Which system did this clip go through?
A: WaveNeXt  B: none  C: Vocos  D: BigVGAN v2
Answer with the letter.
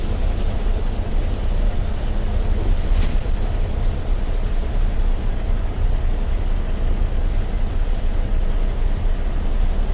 B